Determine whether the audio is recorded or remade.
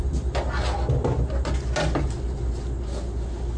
recorded